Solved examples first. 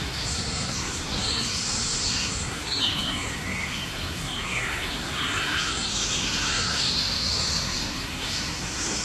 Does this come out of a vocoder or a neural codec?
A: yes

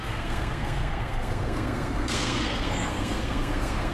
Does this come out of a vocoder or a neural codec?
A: yes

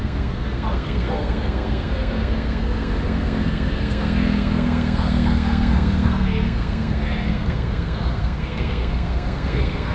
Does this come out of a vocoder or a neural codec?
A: yes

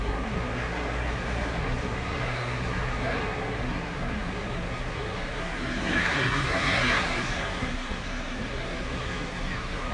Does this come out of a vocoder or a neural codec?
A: yes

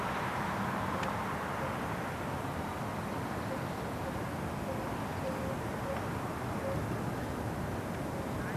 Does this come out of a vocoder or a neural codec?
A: no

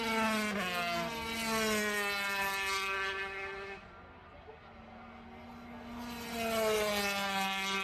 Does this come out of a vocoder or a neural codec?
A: no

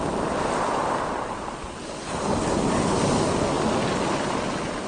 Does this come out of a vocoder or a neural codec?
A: no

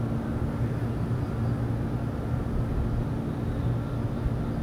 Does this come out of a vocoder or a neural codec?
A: no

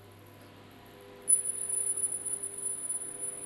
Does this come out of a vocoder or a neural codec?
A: no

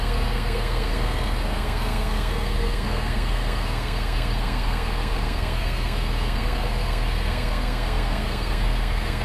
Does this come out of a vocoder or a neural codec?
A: yes